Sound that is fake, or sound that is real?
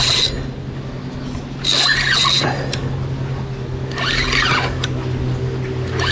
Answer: real